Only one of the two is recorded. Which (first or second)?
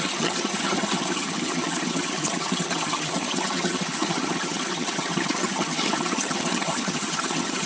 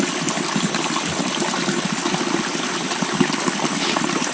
second